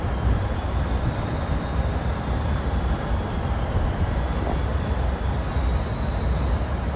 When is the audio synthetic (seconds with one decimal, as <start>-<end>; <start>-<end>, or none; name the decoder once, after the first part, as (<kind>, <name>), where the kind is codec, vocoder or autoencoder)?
0.6-3.3 (vocoder, BigVGAN v2); 4.6-5.5